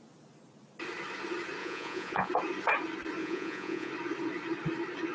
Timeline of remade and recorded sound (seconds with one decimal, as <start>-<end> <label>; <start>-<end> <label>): 0.0-1.6 recorded; 1.6-2.3 remade; 2.3-3.2 recorded; 3.2-3.9 remade; 3.9-5.1 recorded